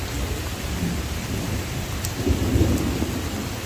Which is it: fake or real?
real